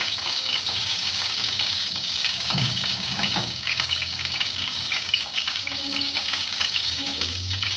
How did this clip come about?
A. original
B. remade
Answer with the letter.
B